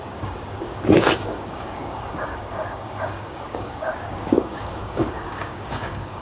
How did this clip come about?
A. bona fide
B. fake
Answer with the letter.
B